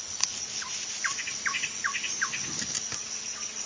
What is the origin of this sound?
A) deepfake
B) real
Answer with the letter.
B